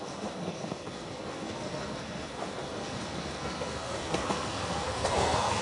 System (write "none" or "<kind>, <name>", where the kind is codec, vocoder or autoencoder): codec, SNAC